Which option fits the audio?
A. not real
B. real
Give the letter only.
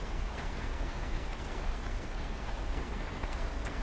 A